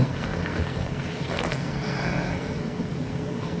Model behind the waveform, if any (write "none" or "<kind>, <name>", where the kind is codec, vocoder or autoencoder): codec, SNAC